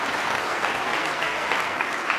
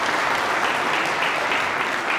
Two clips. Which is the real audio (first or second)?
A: second